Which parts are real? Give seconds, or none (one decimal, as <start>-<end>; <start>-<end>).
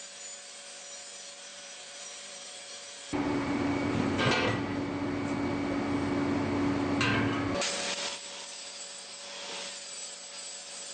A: 0.0-1.5; 4.2-10.9